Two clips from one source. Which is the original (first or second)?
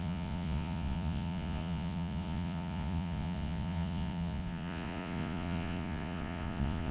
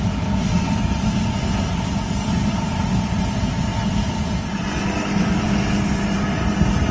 second